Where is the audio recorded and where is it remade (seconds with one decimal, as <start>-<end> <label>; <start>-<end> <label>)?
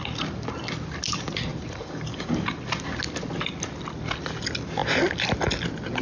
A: 0.0-1.5 recorded; 1.5-2.6 remade; 2.6-6.0 recorded